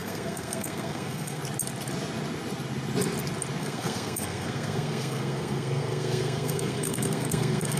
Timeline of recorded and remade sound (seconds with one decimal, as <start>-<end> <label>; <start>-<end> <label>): 0.0-1.4 remade; 1.4-3.6 recorded; 3.6-7.8 remade